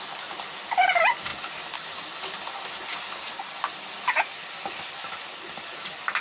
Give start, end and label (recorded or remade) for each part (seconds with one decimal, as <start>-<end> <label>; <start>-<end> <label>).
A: 0.0-6.2 recorded